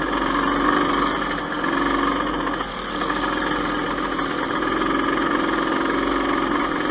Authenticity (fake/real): real